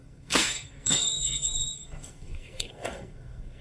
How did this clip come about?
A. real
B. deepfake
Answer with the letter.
B